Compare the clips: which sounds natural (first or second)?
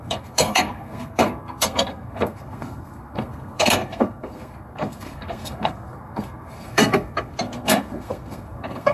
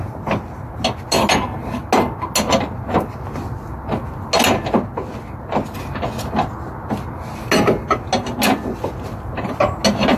second